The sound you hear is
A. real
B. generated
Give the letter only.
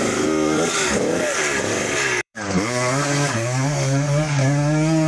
B